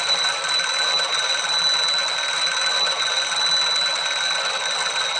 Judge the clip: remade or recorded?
recorded